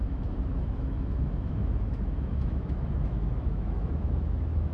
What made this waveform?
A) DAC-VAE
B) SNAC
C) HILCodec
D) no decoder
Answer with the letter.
A